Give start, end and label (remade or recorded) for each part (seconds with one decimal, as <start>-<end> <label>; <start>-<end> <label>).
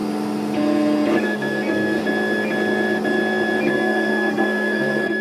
0.0-1.2 recorded; 1.2-2.0 remade; 2.0-3.7 recorded; 3.7-5.2 remade